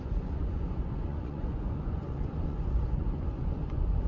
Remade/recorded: remade